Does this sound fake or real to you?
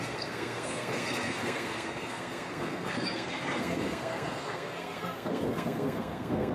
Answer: fake